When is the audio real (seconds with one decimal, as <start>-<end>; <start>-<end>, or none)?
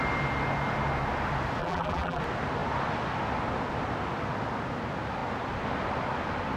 0.0-1.6; 2.2-6.6